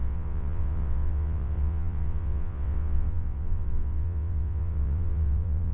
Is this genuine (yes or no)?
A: no